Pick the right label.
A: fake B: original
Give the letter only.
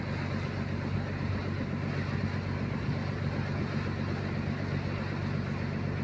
B